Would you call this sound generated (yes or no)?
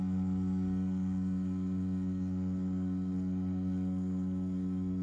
yes